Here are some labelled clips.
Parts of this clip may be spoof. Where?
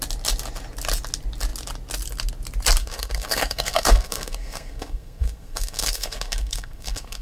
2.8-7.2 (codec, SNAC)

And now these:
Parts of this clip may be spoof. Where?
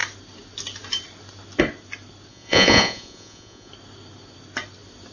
2.3-3.7 (vocoder, Vocos)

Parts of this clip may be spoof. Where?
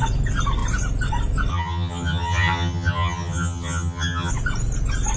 1.5-4.3 (vocoder, HiFi-GAN)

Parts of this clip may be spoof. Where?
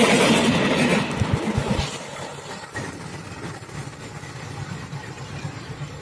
5.0-6.0 (vocoder, BigVGAN v2)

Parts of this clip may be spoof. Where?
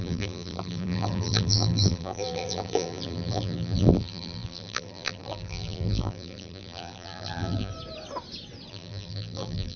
0.0-7.7 (vocoder, BigVGAN v2); 8.7-9.8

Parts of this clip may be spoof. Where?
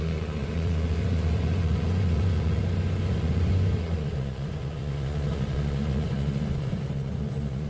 0.0-2.6 (vocoder, Vocos); 3.1-7.7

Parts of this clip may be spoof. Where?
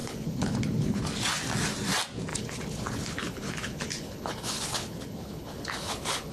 0.0-1.0 (codec, HILCodec); 2.3-6.3